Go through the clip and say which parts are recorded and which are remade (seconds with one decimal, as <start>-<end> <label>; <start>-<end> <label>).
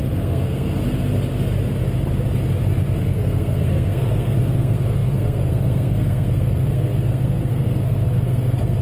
0.0-0.8 remade; 0.8-3.0 recorded; 3.0-8.8 remade